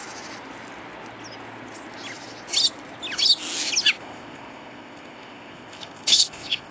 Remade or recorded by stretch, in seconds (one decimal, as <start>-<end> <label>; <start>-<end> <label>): 0.0-4.0 recorded; 4.0-6.7 remade